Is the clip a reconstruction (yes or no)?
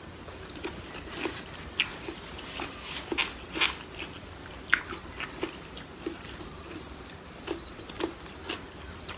no